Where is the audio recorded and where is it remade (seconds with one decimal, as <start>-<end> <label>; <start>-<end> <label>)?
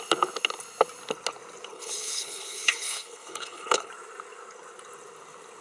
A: 0.0-1.7 recorded; 1.7-3.9 remade; 3.9-5.6 recorded